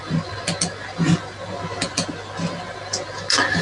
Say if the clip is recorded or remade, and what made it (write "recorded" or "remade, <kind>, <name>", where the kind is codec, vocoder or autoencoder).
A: recorded